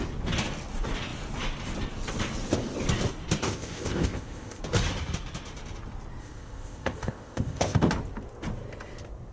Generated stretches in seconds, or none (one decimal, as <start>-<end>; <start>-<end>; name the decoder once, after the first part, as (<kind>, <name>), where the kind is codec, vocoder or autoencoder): 3.4-4.6 (codec, ZipCodec); 6.2-7.9